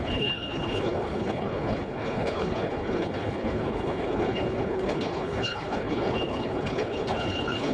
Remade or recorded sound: remade